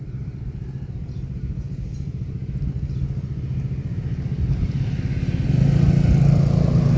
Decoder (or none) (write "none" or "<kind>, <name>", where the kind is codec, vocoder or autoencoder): none